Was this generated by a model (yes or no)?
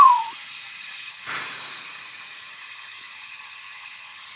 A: yes